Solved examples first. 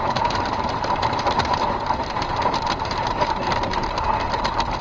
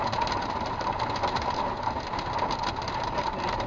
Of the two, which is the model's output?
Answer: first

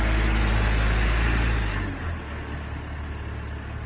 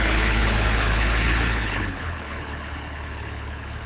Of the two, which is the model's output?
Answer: second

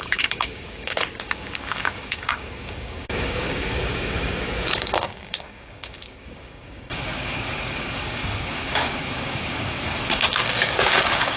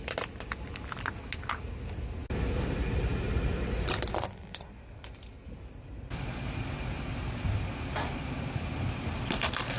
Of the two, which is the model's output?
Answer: first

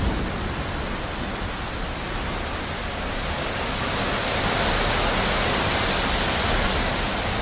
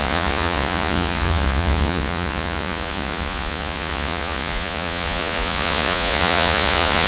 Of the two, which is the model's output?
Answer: second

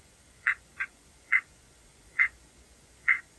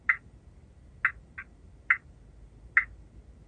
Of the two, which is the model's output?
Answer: first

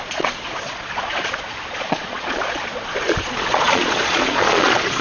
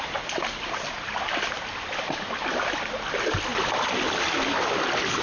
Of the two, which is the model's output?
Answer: first